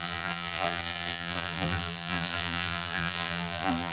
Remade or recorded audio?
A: remade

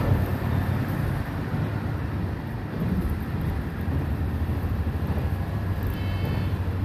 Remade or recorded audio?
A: remade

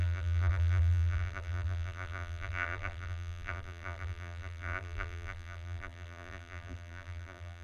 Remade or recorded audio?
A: remade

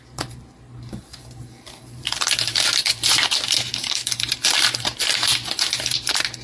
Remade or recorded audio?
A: remade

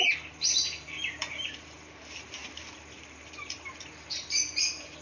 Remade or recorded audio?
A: remade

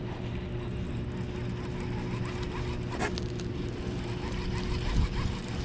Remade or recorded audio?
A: recorded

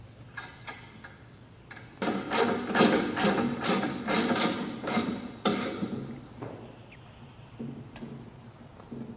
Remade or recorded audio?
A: recorded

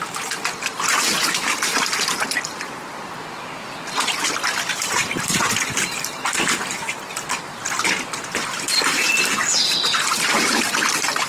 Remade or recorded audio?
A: remade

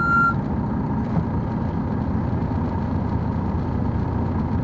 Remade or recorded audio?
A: recorded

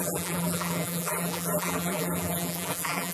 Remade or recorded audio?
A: remade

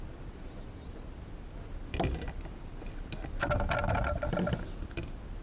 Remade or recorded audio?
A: recorded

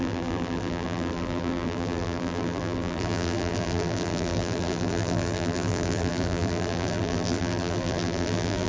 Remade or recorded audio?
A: remade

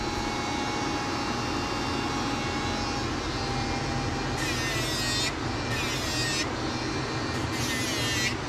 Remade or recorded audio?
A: recorded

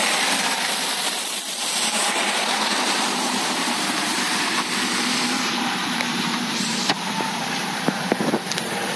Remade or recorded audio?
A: remade